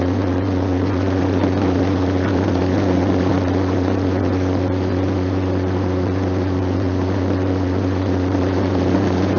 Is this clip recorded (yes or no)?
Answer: no